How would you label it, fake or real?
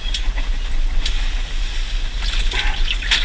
real